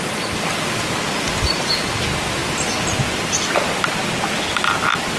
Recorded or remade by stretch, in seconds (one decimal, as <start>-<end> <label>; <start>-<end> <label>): 0.0-5.2 recorded